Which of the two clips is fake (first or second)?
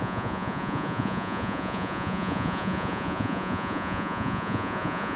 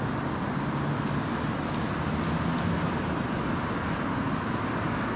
first